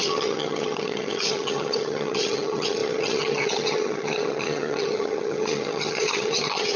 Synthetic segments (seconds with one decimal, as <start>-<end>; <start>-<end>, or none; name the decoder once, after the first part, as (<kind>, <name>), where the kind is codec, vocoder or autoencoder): 0.0-6.8 (vocoder, HiFi-GAN)